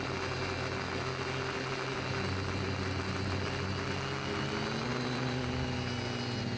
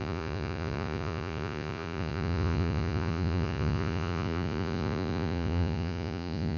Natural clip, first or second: first